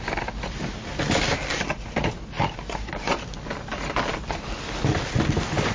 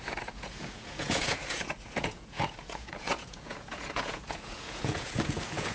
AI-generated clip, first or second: second